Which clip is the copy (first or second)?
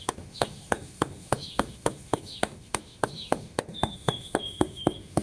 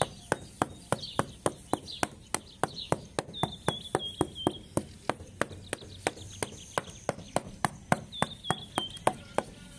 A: first